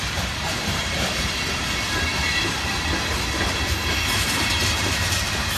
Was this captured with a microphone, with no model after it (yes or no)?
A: no